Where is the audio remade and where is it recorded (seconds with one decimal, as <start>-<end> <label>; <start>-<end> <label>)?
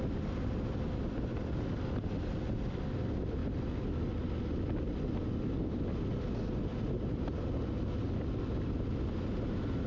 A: 0.0-9.9 recorded